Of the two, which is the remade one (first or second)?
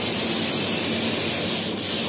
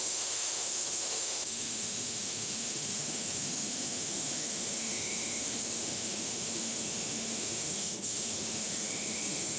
second